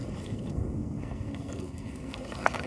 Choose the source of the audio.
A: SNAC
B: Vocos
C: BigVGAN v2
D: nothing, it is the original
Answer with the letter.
A